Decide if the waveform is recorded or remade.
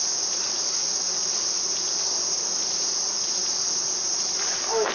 recorded